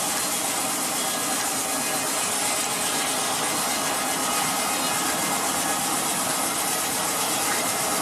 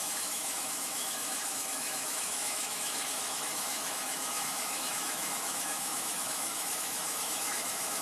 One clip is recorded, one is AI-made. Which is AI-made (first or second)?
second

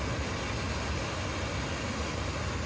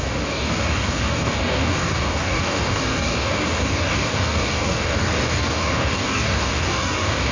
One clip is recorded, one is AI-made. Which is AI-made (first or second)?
second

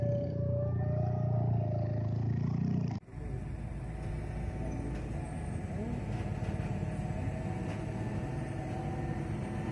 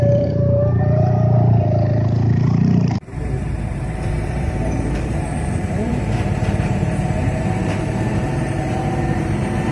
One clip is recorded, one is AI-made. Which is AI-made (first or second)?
second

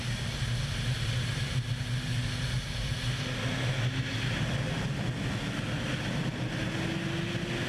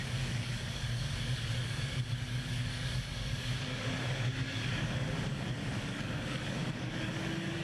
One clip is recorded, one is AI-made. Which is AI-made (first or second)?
second